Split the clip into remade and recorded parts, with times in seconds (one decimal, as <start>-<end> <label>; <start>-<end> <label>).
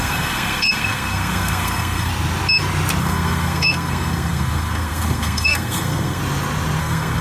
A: 0.0-2.1 remade; 2.1-3.0 recorded; 3.0-6.2 remade; 6.2-6.8 recorded; 6.8-7.2 remade